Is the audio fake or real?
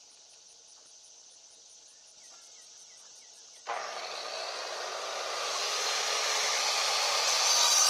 real